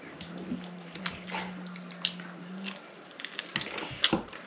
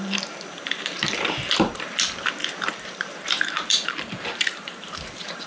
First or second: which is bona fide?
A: first